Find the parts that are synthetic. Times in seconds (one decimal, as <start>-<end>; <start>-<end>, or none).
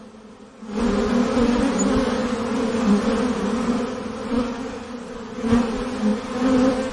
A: none